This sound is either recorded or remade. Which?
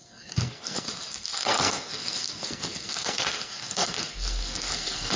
remade